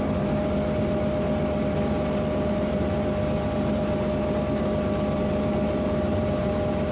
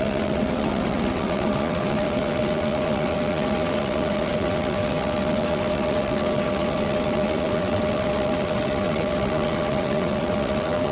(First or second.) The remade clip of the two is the second